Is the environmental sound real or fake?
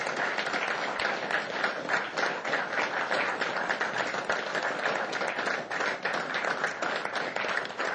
real